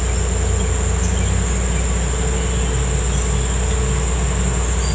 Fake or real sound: real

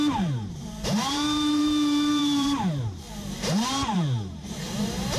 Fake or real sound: fake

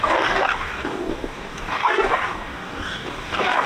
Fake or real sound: fake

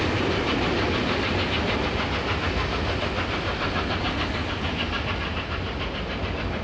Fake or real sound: real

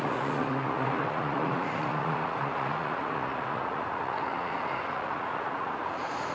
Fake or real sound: fake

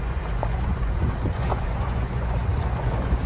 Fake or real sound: fake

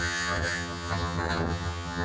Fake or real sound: fake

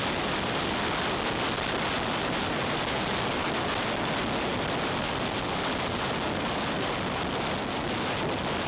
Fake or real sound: real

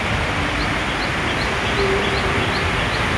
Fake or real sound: real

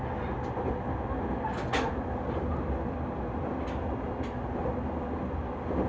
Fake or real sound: real